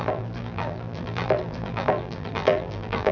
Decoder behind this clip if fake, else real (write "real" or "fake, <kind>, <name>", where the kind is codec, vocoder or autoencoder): fake, vocoder, BigVGAN v2